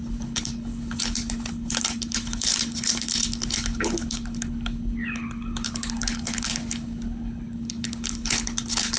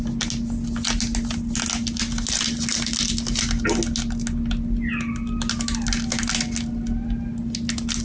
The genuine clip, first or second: second